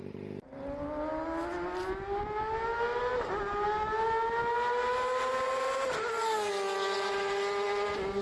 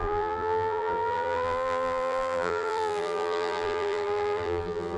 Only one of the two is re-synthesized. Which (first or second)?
second